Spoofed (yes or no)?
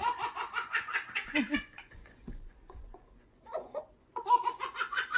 yes